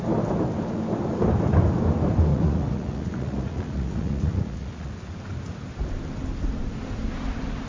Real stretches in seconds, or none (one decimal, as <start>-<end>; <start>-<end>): 0.0-2.3; 4.9-7.7